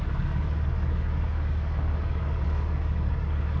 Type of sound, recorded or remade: remade